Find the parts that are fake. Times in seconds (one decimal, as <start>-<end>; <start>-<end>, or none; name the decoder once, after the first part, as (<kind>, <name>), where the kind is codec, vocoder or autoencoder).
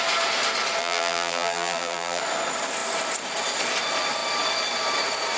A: 0.8-2.2 (vocoder, BigVGAN v2)